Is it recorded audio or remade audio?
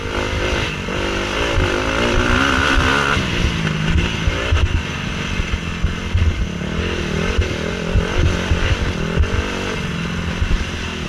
recorded